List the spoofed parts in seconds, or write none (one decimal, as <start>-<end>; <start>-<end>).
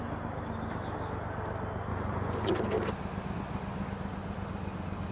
1.9-2.5